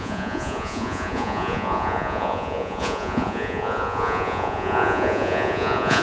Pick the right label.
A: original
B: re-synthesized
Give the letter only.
B